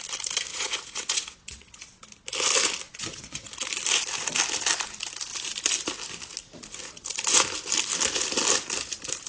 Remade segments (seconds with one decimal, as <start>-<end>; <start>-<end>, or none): 0.5-2.0; 2.9-3.5

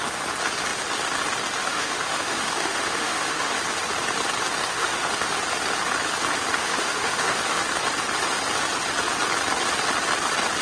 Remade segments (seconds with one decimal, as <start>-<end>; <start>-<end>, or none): 1.6-3.5; 4.7-5.4; 6.6-7.4